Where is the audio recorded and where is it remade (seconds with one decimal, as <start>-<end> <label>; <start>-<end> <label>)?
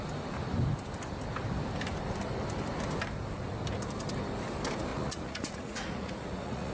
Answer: 0.0-4.9 recorded; 4.9-6.7 remade